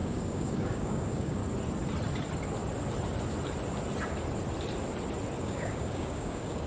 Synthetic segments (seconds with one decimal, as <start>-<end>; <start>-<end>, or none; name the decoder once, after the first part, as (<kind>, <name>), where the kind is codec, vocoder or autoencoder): 0.0-1.4 (codec, DAC); 5.4-6.7